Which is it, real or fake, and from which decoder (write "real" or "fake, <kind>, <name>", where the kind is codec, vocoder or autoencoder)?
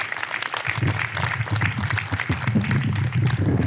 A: real